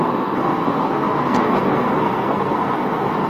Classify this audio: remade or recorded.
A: remade